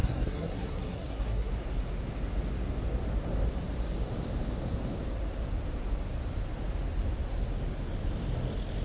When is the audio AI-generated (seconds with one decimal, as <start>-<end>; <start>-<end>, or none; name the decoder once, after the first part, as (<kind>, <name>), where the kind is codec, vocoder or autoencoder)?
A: 0.0-1.5 (codec, SNAC)